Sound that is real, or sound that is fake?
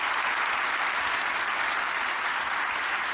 real